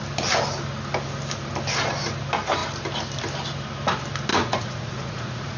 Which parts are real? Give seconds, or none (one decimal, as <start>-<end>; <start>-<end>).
0.0-4.3